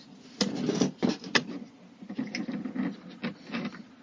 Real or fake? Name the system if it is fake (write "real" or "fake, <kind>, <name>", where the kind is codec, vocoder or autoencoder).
real